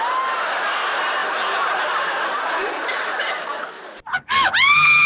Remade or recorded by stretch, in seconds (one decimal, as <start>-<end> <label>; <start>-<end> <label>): 0.0-1.2 recorded; 1.2-1.8 remade; 1.8-2.6 recorded; 2.6-3.3 remade; 3.3-5.1 recorded